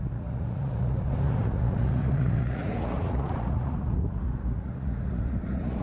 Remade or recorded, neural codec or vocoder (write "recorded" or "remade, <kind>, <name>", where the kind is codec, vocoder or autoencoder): remade, vocoder, Vocos